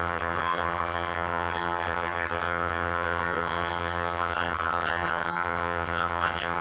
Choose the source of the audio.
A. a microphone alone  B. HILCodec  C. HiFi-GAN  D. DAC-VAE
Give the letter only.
C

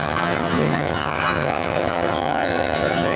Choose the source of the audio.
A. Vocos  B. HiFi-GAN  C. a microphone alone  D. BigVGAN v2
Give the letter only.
B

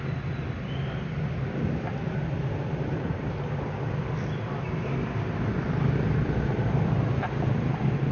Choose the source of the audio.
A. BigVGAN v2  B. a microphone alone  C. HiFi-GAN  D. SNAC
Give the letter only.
B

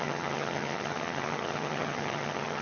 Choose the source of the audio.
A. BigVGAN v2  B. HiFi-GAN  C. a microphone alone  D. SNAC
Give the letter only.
B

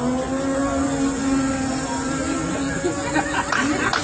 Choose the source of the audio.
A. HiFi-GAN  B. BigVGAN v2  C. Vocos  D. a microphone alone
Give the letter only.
D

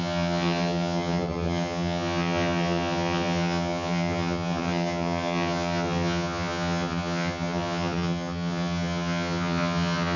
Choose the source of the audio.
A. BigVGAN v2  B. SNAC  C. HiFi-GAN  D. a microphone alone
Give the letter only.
C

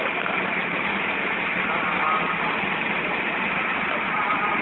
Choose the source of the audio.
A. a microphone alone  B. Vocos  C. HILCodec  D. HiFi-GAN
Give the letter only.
A